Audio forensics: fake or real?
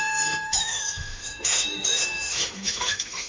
fake